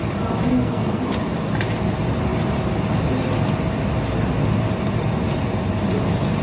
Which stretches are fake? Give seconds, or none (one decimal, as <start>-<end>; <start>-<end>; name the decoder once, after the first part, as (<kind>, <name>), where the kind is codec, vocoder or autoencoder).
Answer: 0.5-1.0 (codec, SNAC)